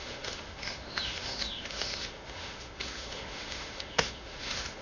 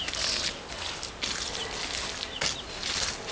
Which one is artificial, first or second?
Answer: first